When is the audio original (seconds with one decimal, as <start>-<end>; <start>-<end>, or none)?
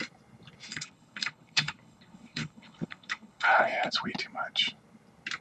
0.0-0.7; 3.9-5.4